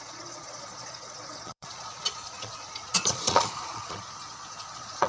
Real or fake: fake